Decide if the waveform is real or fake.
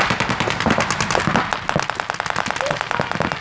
real